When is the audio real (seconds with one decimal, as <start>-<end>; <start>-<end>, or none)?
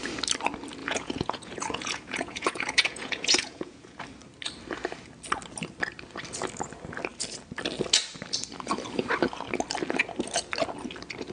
0.0-0.8; 4.0-11.3